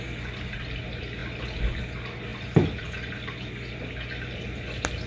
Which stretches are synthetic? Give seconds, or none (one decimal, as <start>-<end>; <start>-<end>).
2.3-3.3